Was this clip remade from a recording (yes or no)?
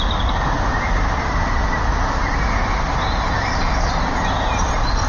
no